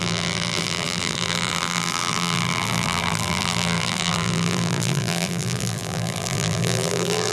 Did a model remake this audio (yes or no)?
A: yes